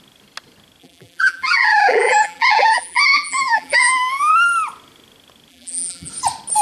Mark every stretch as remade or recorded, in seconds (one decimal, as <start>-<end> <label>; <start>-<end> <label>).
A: 0.0-0.8 recorded; 0.8-4.3 remade; 4.3-5.5 recorded; 5.5-6.1 remade; 6.1-6.6 recorded